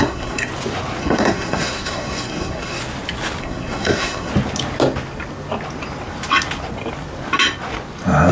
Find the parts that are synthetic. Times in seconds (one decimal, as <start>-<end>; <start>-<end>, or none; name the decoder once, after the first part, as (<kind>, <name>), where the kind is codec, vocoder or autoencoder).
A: 0.0-0.5 (codec, SNAC); 1.0-2.8; 3.4-4.3